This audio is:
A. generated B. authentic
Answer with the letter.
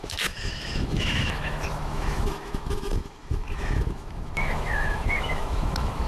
A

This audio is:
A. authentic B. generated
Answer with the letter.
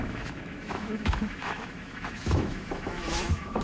B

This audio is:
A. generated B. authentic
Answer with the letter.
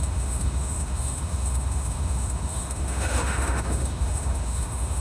A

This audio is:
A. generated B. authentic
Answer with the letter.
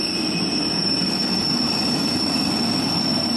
B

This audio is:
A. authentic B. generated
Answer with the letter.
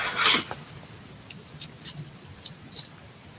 A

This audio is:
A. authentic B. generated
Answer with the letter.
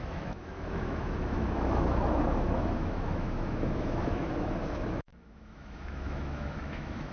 B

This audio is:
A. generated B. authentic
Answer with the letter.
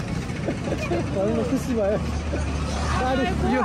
B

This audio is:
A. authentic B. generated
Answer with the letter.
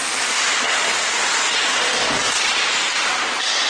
A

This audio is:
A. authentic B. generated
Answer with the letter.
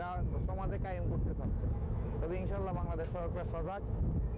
B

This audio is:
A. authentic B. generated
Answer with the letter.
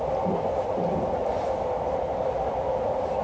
A